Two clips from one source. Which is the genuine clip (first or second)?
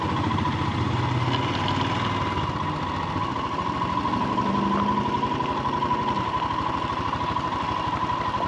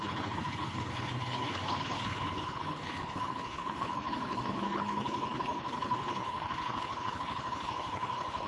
first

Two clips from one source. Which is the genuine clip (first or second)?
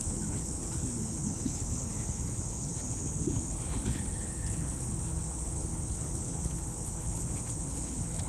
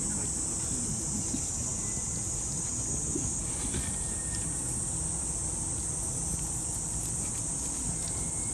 second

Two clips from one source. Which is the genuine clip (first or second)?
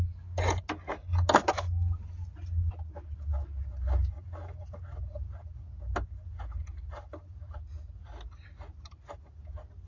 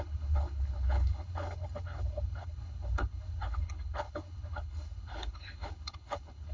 first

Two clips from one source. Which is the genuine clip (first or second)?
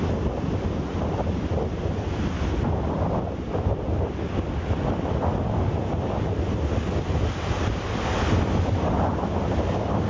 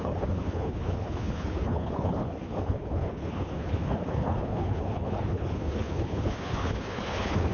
first